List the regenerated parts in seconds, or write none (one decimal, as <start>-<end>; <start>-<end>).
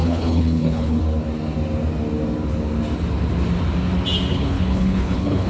0.0-1.0; 4.3-5.5